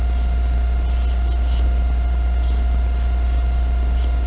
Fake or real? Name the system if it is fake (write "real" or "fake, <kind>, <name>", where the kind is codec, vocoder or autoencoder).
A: real